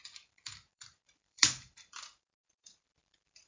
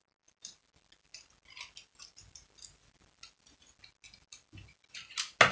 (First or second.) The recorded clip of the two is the second